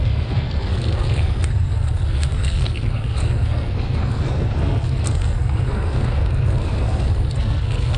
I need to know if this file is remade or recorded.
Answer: remade